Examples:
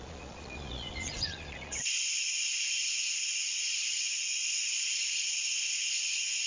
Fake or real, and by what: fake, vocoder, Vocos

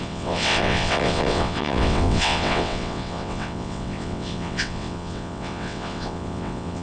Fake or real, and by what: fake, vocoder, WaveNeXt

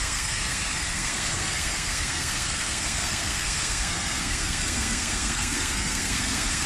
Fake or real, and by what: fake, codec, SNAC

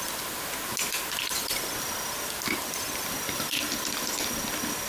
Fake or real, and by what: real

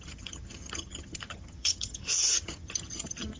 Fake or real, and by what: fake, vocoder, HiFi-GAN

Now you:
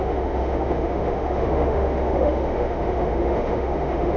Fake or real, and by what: fake, autoencoder, DAC-VAE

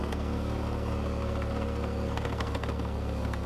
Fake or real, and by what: fake, codec, SNAC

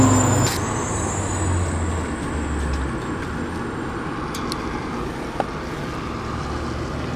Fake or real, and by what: real